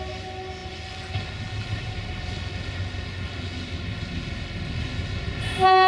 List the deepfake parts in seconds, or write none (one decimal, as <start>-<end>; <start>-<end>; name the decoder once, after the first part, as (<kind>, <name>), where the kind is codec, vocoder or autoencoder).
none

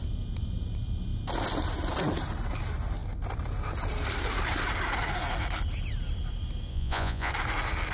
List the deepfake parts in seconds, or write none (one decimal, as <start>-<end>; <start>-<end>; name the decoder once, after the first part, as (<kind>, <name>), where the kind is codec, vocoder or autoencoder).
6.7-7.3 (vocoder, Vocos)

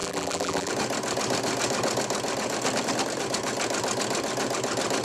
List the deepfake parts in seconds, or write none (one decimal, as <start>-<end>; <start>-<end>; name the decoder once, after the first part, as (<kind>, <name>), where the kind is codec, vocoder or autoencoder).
0.0-0.7 (vocoder, BigVGAN v2)